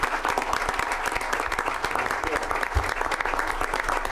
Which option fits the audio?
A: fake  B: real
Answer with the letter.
B